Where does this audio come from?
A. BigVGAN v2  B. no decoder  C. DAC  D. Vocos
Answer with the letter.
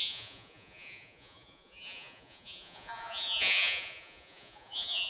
D